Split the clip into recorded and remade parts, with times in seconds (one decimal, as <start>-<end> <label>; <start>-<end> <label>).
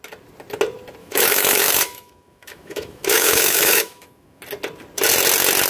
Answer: 0.0-1.0 recorded; 1.0-4.4 remade; 4.4-5.7 recorded